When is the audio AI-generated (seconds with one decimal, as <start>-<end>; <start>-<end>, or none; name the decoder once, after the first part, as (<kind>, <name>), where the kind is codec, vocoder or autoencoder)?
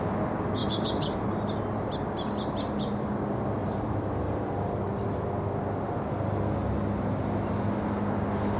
0.6-1.3 (vocoder, BigVGAN v2); 3.6-4.2